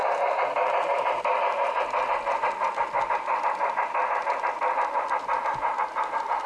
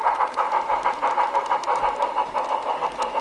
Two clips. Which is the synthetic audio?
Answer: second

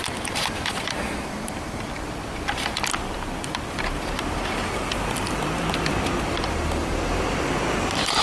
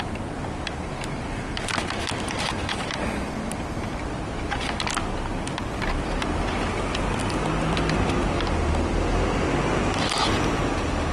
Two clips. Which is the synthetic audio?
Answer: first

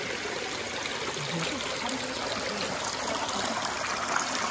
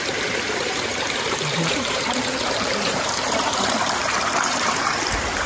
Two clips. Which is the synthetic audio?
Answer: second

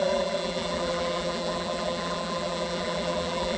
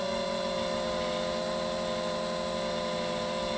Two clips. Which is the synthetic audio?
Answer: first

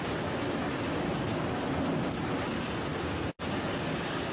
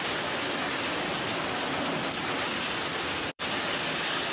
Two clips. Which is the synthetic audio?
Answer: second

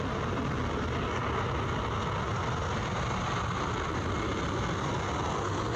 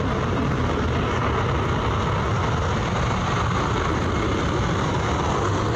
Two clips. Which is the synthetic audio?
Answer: second